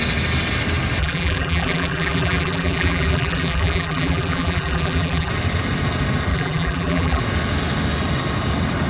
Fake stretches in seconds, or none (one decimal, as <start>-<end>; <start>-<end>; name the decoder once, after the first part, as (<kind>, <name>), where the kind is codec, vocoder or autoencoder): 1.0-5.3 (vocoder, BigVGAN v2); 6.3-7.2